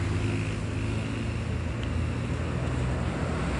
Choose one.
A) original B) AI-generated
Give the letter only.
A